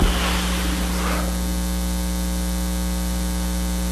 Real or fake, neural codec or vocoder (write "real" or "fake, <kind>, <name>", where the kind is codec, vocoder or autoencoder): real